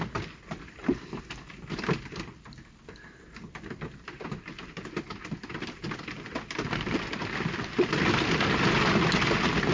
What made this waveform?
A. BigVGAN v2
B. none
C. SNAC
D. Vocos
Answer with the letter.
B